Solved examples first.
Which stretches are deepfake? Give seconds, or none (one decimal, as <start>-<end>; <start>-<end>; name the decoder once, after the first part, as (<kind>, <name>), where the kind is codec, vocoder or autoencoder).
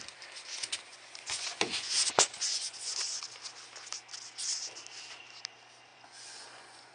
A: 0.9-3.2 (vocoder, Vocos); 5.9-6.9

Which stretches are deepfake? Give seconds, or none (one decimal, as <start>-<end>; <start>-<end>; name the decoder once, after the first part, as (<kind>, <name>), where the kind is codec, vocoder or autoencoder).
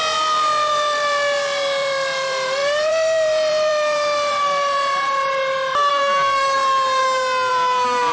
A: 0.0-7.0 (vocoder, BigVGAN v2); 7.5-8.1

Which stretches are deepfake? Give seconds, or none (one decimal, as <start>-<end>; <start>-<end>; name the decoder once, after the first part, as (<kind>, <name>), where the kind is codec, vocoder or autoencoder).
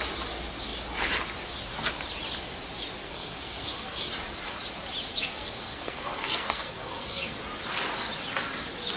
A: 3.0-4.1 (codec, SNAC); 5.1-7.4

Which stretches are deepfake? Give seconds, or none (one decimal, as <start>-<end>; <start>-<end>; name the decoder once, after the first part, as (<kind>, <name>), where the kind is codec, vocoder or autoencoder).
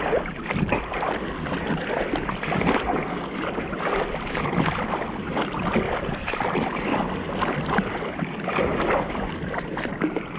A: none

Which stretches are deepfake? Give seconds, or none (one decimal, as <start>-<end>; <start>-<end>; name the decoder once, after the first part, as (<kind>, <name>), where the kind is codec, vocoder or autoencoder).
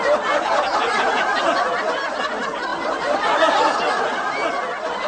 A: none